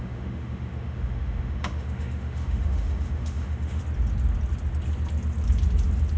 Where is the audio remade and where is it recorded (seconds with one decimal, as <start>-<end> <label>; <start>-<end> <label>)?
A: 0.0-3.8 remade; 3.8-6.2 recorded